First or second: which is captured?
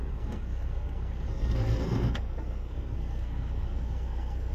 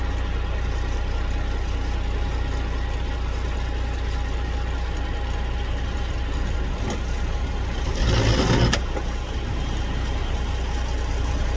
second